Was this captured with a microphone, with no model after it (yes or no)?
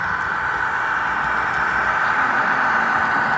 yes